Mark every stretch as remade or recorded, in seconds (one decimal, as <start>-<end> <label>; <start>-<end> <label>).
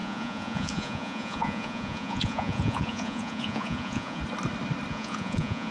0.0-4.2 remade; 4.2-4.9 recorded; 4.9-5.7 remade